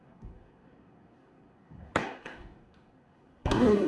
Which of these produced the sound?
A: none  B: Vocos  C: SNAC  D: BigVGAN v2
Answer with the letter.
C